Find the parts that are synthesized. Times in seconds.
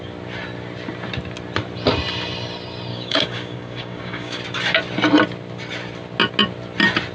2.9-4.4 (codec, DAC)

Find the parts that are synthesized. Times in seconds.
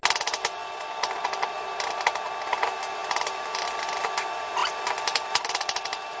0.6-2.0 (vocoder, BigVGAN v2); 3.0-4.0; 4.6-5.5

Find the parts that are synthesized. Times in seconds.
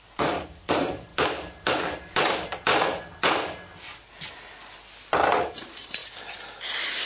0.0-1.1 (vocoder, BigVGAN v2); 5.4-6.0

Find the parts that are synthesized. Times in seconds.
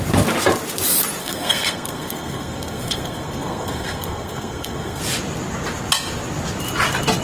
1.2-5.0 (codec, SNAC)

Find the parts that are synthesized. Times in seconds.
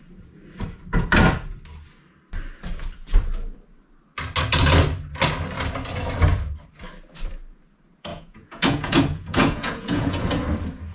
8.1-10.3 (vocoder, Vocos)